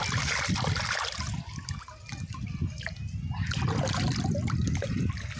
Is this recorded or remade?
recorded